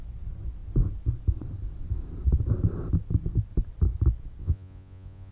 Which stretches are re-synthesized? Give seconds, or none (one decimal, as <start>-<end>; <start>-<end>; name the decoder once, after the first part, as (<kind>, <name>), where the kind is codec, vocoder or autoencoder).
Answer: 4.4-5.3 (vocoder, Vocos)

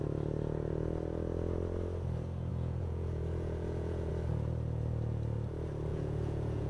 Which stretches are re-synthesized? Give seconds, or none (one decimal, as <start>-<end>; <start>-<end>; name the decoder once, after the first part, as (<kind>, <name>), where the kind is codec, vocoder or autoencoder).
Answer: 2.5-4.1 (vocoder, Vocos); 5.9-6.7

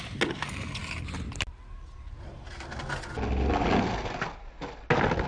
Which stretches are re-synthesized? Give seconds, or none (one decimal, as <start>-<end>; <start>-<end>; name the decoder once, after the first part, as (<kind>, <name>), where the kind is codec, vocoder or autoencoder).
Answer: none